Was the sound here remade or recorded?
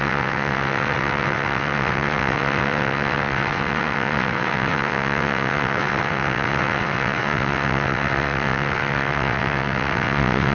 remade